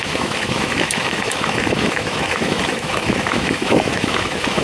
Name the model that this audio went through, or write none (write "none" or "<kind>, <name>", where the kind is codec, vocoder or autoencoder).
autoencoder, DAC-VAE